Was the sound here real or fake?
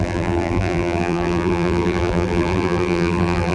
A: fake